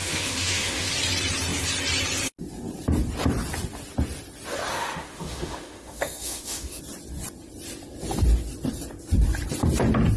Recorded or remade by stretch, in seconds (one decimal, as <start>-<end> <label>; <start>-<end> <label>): 0.0-0.9 remade; 0.9-4.7 recorded; 4.7-6.8 remade; 6.8-10.2 recorded